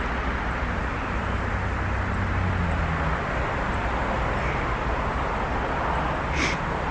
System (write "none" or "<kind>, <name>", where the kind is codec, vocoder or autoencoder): none